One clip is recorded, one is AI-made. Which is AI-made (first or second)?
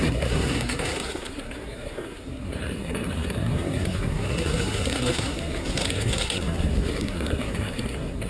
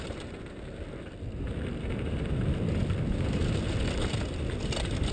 first